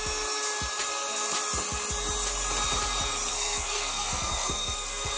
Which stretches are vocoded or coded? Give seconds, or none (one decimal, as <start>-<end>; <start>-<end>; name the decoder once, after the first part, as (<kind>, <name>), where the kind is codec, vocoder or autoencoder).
3.3-5.2 (codec, SNAC)